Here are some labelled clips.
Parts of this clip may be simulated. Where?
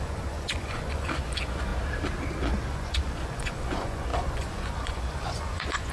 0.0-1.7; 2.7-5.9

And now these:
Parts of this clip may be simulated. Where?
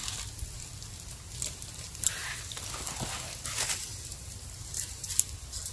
none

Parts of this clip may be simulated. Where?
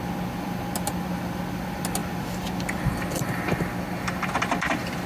none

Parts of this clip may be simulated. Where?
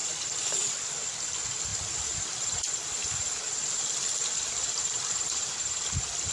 0.0-0.5; 1.7-5.5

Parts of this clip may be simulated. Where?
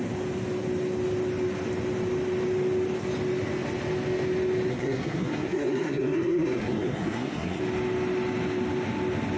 4.7-7.6